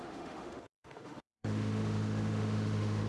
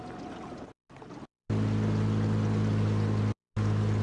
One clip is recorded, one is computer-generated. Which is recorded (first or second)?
second